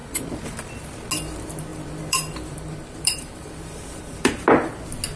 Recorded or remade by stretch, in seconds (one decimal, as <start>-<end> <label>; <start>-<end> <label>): 0.0-0.7 remade; 0.7-1.7 recorded; 1.7-4.8 remade; 4.8-5.2 recorded